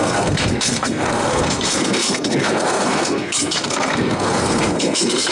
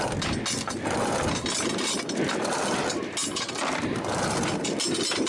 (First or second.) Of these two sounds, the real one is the second